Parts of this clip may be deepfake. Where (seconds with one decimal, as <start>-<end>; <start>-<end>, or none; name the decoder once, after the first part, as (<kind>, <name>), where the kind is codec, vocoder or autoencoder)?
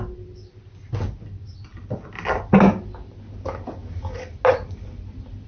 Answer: none